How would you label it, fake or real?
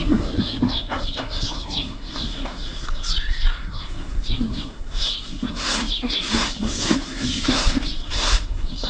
fake